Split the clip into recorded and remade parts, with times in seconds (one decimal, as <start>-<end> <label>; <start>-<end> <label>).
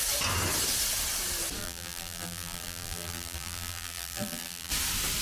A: 0.0-1.6 recorded; 1.6-4.7 remade; 4.7-5.2 recorded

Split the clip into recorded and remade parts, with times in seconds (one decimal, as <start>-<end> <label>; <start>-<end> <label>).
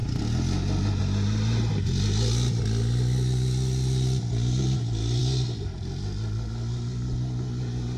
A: 0.0-8.0 recorded